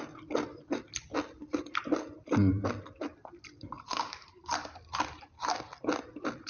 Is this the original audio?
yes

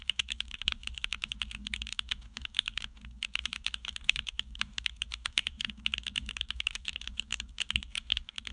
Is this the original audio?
no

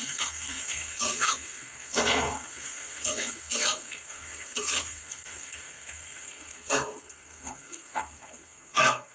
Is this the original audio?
no